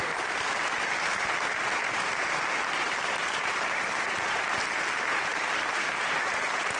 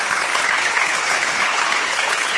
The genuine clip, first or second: first